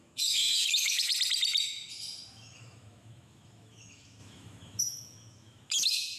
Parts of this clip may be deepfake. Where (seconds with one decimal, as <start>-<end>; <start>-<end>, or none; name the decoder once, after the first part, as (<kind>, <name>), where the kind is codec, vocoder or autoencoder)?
0.0-1.1 (autoencoder, DAC-VAE); 2.3-6.2